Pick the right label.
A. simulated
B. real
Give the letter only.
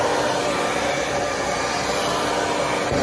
B